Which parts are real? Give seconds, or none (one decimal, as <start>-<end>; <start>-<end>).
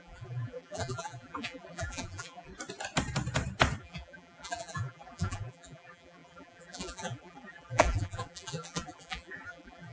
2.5-3.8